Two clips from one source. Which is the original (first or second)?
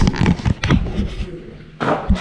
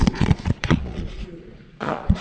first